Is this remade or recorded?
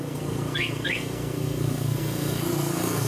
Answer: remade